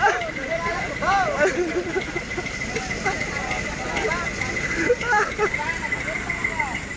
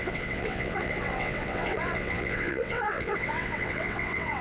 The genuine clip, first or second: first